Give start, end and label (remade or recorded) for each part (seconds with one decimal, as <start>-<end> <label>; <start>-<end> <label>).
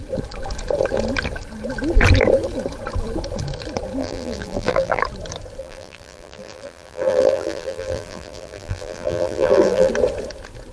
0.0-4.0 recorded; 4.0-5.0 remade; 5.0-5.6 recorded; 5.6-9.9 remade; 9.9-10.7 recorded